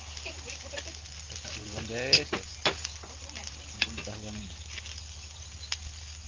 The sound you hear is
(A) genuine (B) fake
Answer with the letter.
A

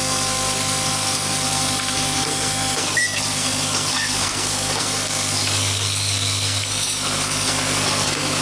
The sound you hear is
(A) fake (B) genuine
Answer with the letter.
A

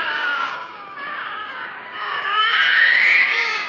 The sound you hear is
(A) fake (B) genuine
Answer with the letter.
A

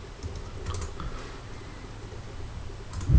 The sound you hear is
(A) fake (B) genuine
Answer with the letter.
B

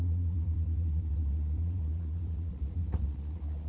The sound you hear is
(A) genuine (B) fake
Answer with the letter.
B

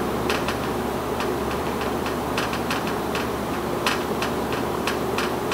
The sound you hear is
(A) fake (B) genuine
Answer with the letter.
A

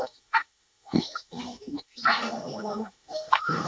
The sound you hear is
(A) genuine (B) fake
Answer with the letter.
B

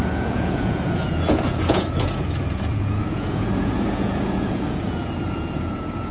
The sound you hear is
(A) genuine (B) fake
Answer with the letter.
B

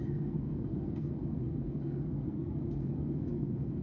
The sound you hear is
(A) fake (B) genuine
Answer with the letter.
A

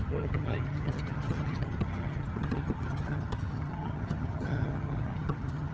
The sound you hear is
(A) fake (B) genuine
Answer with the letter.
A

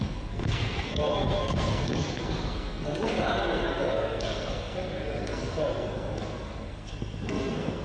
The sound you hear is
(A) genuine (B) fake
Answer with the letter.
B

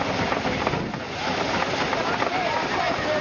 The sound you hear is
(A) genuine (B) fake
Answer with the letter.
A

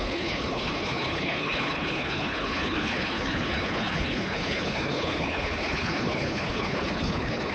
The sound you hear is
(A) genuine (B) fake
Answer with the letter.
B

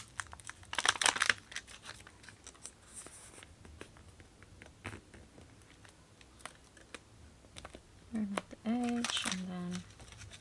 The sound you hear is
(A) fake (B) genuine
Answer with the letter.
B